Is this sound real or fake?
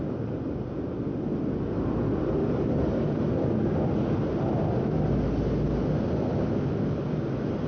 real